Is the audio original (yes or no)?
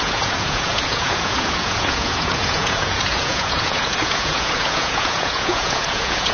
no